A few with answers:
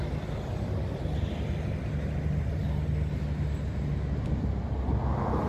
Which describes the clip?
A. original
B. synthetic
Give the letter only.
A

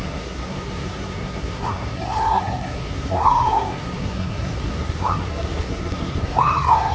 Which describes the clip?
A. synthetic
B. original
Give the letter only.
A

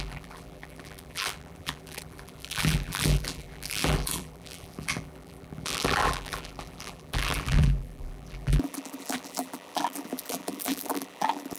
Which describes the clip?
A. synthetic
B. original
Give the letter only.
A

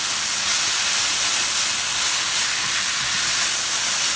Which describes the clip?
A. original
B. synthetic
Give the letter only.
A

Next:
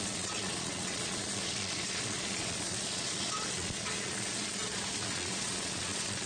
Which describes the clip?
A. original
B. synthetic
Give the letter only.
B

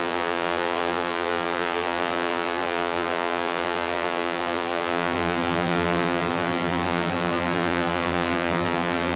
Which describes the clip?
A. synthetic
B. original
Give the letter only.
A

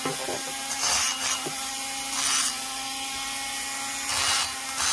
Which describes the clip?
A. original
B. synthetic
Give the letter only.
A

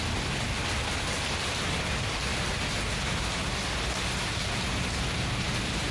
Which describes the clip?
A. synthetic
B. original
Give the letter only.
B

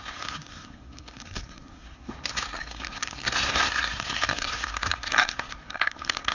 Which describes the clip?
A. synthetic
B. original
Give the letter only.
A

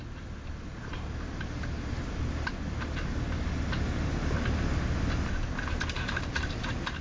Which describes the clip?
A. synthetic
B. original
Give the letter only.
B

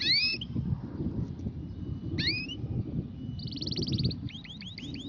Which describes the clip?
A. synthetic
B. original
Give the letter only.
B